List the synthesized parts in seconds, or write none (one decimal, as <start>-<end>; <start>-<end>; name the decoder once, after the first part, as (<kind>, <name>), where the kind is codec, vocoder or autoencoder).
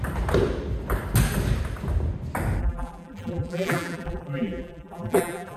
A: 2.6-5.6 (vocoder, BigVGAN v2)